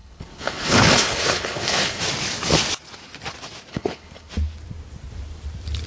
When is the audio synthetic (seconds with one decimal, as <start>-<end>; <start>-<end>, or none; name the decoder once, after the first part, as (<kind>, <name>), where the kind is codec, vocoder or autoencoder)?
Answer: 0.0-2.0 (codec, HILCodec); 3.7-4.3